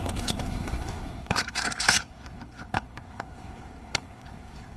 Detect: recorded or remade remade